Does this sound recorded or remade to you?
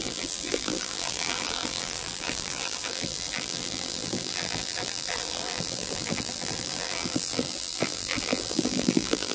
remade